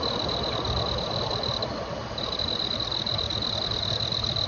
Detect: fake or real real